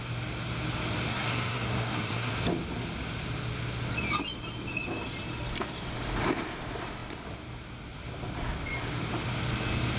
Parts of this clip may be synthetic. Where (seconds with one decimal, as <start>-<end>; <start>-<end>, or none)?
1.1-2.3